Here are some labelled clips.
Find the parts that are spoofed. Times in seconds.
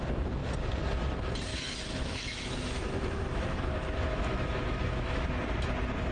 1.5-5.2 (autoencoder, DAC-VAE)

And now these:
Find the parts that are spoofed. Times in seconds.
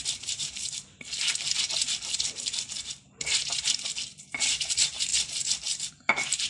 none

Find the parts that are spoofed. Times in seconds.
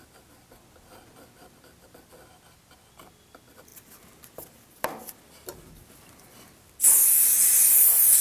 none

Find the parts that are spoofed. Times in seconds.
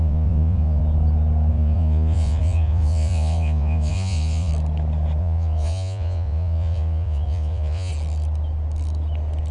0.0-0.8 (vocoder, Vocos); 1.5-4.5; 5.2-7.9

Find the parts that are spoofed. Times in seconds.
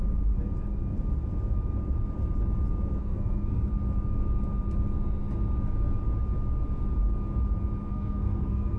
3.0-3.7 (codec, SNAC); 7.9-8.8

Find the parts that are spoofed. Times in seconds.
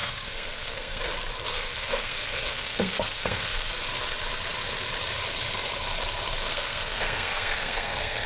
0.0-1.0 (codec, SNAC); 1.5-3.7; 6.5-8.3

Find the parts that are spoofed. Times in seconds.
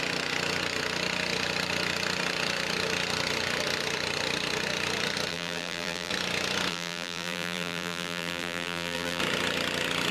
5.3-6.1 (vocoder, BigVGAN v2); 6.7-9.2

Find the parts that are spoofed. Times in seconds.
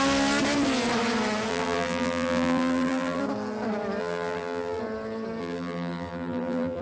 1.5-3.2 (vocoder, BigVGAN v2); 4.0-4.8; 5.4-6.8